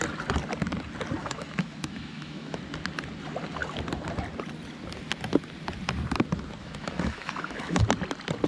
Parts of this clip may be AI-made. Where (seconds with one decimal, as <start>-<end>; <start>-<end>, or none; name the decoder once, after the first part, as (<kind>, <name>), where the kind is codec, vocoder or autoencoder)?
1.2-2.6 (autoencoder, DAC-VAE); 6.6-7.8

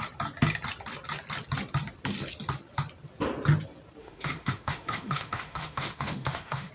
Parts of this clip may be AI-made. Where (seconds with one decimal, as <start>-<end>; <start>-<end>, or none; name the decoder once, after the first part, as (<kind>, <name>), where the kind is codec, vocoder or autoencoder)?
4.0-6.7 (autoencoder, DAC-VAE)

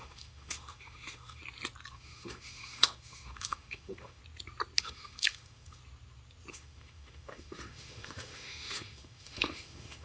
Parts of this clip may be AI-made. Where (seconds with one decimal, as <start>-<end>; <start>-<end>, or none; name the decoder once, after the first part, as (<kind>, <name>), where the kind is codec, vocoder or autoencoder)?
0.0-1.4 (autoencoder, DAC-VAE); 1.9-4.2; 4.8-5.8; 6.5-10.0

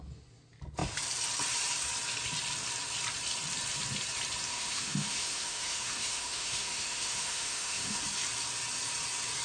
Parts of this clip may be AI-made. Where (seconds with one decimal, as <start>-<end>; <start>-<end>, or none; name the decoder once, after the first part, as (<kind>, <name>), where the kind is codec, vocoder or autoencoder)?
4.5-8.0 (autoencoder, DAC-VAE)

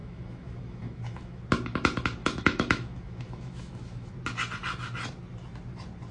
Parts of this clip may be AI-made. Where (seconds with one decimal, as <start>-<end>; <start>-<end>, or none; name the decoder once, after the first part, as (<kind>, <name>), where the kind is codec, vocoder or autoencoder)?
0.0-1.4 (autoencoder, DAC-VAE); 2.2-4.1

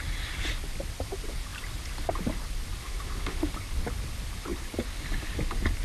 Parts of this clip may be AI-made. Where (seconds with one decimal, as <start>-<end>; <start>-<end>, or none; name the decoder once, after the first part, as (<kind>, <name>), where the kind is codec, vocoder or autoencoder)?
2.8-3.5 (autoencoder, DAC-VAE)

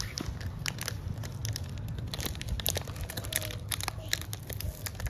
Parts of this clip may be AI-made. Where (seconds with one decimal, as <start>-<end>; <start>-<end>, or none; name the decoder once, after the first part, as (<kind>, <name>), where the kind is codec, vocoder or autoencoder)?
none

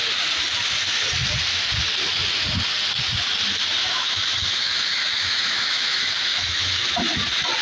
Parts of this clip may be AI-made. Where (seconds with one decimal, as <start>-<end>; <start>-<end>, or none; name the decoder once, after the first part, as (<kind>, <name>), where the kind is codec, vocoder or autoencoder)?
3.8-7.0 (autoencoder, DAC-VAE)